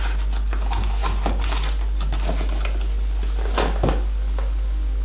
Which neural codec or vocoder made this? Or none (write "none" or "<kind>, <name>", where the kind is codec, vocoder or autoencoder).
none